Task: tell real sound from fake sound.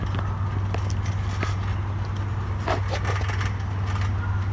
real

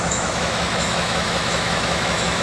fake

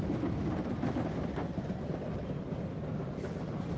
real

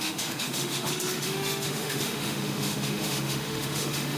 fake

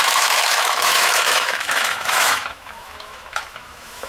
fake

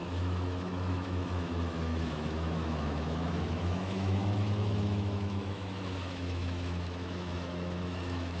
fake